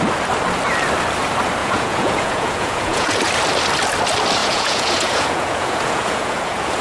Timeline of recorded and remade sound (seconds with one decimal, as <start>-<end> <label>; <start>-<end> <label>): 0.0-1.6 recorded; 1.6-3.3 remade; 3.3-4.4 recorded; 4.4-6.8 remade